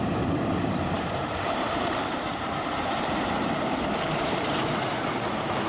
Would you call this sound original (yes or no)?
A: no